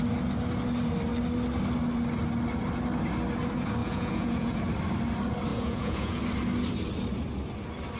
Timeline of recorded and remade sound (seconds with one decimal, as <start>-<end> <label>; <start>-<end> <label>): 0.0-3.8 recorded; 3.8-4.6 remade; 4.6-5.5 recorded; 5.5-6.2 remade; 6.2-8.0 recorded